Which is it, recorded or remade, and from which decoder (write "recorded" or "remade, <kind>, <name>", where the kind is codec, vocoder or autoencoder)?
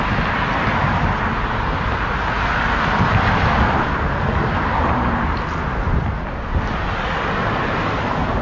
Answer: recorded